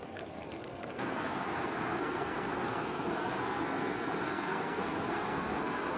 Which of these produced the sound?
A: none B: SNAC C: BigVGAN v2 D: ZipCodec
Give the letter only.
B